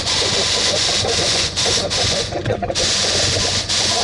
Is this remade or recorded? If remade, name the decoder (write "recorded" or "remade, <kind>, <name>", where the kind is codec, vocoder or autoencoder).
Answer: remade, vocoder, Vocos